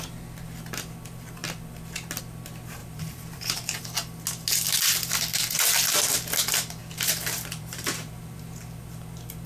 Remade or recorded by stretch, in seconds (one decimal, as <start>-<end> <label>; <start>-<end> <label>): 0.0-2.8 recorded; 2.8-3.8 remade; 3.8-6.8 recorded; 6.8-8.4 remade; 8.4-9.5 recorded